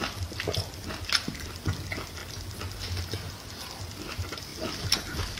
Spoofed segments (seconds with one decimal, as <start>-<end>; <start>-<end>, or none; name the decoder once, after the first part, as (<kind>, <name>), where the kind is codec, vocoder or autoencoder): none